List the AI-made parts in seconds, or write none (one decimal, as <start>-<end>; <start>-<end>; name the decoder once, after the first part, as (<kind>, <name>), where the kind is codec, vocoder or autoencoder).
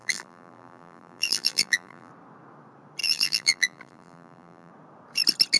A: 0.0-2.1 (vocoder, BigVGAN v2); 3.0-4.7